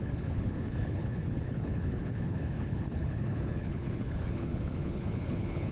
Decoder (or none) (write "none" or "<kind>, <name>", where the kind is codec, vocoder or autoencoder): codec, HILCodec